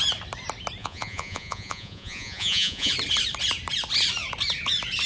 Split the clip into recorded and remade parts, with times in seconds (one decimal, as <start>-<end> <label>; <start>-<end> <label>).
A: 0.0-0.8 recorded; 0.8-2.9 remade; 2.9-5.1 recorded